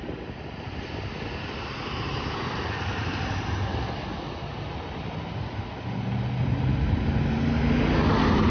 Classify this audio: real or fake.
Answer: real